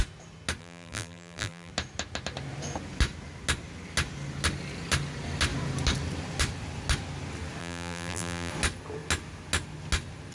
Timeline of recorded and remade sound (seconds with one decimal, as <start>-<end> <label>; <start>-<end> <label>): 0.0-0.6 recorded; 0.6-1.7 remade; 1.7-7.6 recorded; 7.6-8.5 remade; 8.5-10.3 recorded